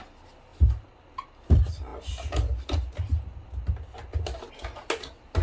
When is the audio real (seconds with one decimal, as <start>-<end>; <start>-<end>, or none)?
0.0-5.4